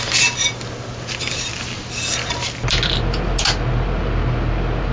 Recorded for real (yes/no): yes